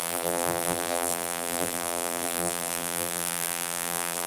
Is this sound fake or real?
fake